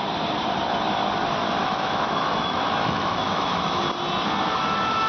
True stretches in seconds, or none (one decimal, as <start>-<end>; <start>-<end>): 0.0-1.6; 3.8-5.1